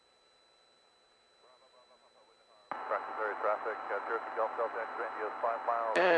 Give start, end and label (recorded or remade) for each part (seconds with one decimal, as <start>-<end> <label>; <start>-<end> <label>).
0.0-2.6 recorded; 2.6-6.2 remade